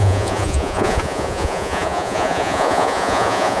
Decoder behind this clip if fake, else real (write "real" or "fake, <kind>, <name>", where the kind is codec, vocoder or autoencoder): fake, vocoder, Vocos